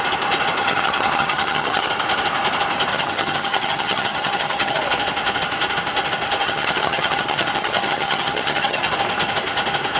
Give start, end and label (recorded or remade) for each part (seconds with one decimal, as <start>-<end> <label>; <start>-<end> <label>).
0.0-0.6 recorded; 0.6-1.9 remade; 1.9-2.9 recorded; 2.9-4.8 remade; 4.8-6.4 recorded; 6.4-8.9 remade; 8.9-10.0 recorded